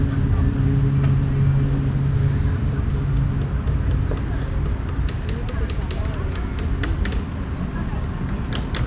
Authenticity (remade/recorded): recorded